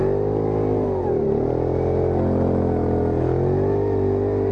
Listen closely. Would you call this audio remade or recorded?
recorded